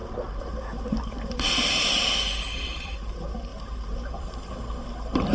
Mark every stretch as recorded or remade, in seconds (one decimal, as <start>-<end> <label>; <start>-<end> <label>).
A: 0.0-5.3 remade